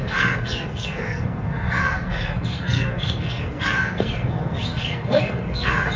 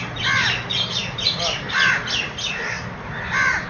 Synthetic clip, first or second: first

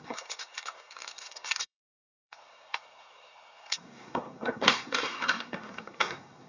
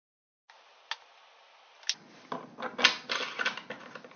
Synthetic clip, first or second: first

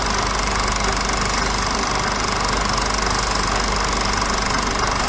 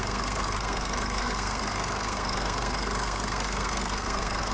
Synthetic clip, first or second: second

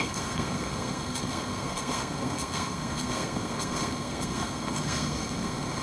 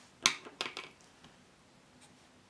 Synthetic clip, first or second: first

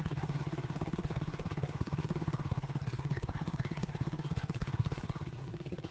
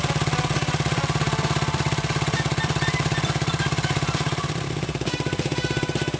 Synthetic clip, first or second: first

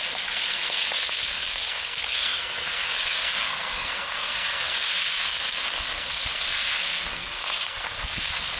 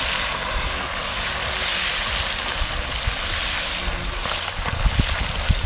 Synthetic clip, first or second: first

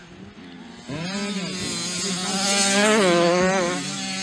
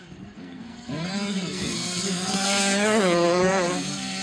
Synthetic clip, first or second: second